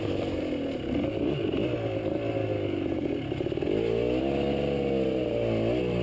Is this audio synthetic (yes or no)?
no